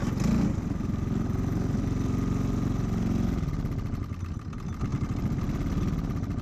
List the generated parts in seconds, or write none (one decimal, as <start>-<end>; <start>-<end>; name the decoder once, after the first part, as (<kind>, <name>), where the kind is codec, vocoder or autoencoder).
none